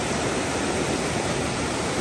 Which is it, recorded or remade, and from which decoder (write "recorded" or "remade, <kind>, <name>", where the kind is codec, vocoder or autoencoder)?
recorded